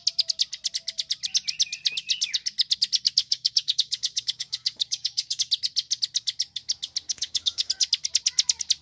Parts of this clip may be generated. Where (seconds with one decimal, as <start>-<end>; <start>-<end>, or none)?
3.2-5.5; 7.1-7.7